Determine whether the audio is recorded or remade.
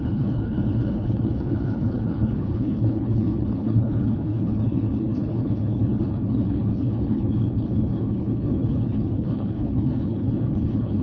remade